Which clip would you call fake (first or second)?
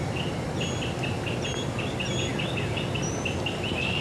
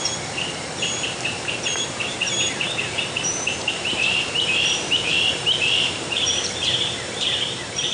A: second